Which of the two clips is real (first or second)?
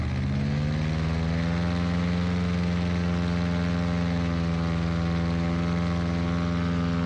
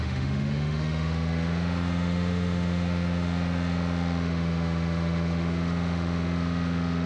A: first